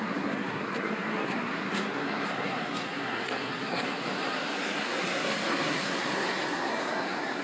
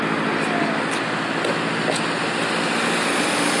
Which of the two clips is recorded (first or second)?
second